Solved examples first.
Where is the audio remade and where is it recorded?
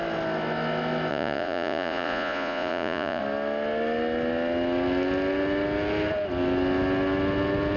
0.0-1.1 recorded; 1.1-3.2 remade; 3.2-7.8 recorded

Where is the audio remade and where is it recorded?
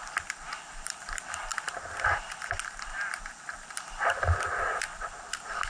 0.0-5.7 recorded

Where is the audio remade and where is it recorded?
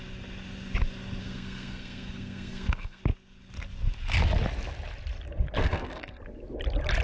0.0-1.2 recorded; 1.2-3.0 remade; 3.0-5.6 recorded; 5.6-6.2 remade; 6.2-7.0 recorded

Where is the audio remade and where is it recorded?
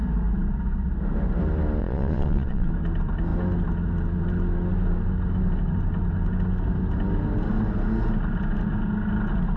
0.0-1.8 recorded; 1.8-2.7 remade; 2.7-9.6 recorded